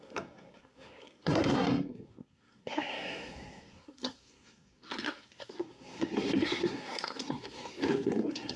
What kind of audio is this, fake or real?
fake